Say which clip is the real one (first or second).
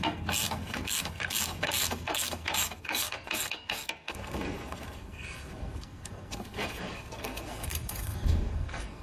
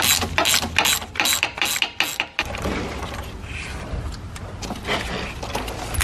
second